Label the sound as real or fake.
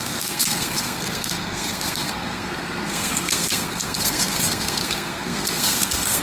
fake